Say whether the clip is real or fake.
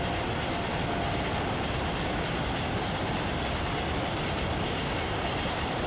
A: real